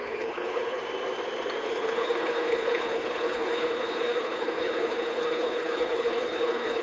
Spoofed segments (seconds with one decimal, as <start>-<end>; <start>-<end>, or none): 0.0-0.8; 1.7-6.8